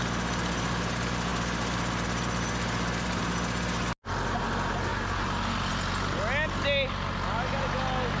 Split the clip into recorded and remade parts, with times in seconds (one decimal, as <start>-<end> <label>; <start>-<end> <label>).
0.0-8.2 recorded